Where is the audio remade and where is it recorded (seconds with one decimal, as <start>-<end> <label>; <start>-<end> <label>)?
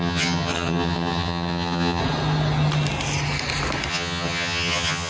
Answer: 0.0-2.0 remade; 2.0-3.9 recorded; 3.9-5.1 remade